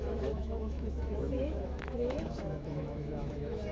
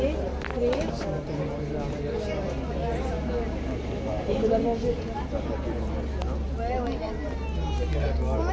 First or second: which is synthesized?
first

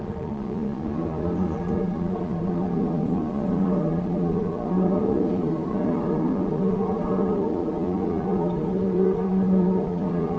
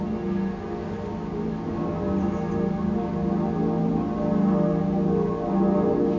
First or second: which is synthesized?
first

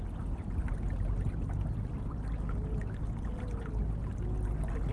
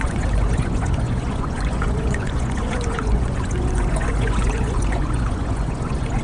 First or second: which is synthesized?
second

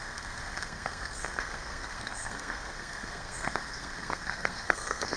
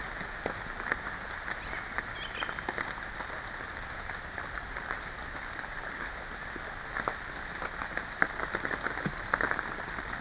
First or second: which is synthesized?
first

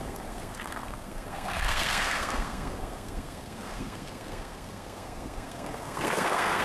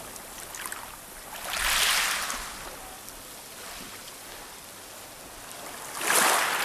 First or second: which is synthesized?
first